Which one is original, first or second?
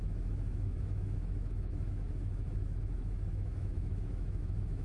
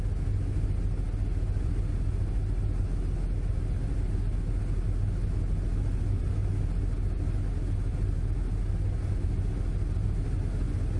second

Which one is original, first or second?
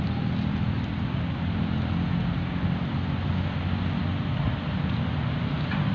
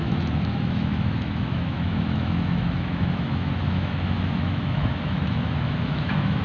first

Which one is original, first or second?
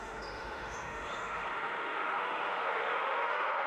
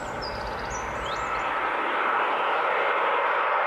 second